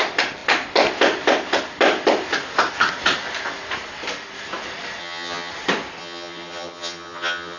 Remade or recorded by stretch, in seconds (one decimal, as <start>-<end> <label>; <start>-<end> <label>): 0.0-5.0 recorded; 5.0-5.5 remade; 5.5-6.0 recorded; 6.0-7.6 remade